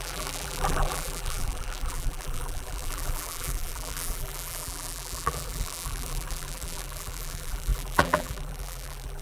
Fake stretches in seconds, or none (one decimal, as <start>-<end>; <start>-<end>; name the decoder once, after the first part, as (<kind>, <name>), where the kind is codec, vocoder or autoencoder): 0.0-9.2 (vocoder, BigVGAN v2)